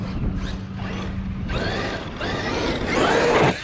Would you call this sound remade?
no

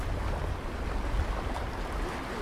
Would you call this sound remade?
no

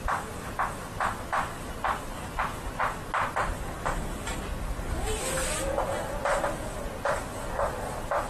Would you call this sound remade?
no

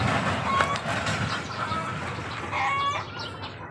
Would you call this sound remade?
no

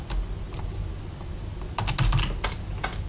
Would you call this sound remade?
no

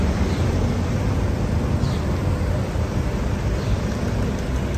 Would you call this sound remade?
yes